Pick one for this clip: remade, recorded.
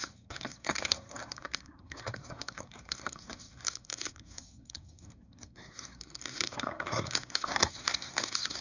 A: remade